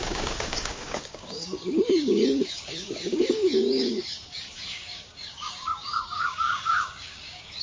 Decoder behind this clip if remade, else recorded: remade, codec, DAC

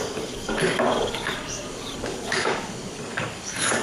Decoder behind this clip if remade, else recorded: remade, codec, DAC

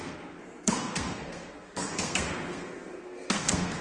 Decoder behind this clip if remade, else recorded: remade, codec, SNAC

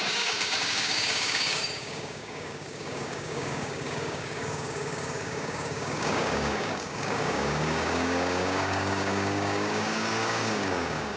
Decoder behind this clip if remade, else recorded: remade, codec, DAC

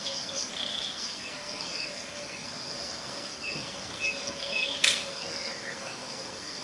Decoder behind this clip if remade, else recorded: remade, codec, SNAC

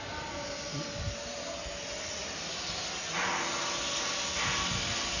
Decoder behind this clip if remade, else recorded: recorded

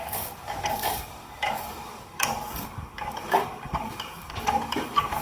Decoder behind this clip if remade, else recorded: remade, codec, DAC